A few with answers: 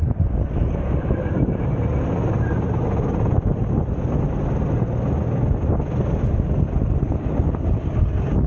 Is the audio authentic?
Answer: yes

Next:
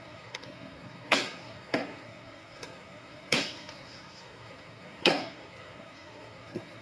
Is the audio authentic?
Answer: no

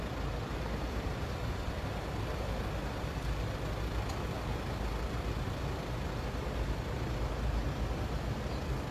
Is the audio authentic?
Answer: yes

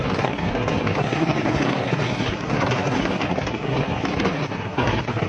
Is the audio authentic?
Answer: no